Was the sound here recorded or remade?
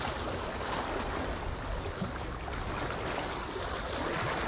recorded